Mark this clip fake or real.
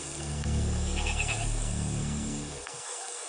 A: fake